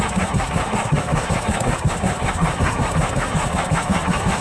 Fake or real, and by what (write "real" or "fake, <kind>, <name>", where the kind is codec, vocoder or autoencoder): fake, codec, SNAC